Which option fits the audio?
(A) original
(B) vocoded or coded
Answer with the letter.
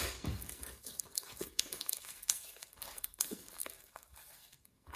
B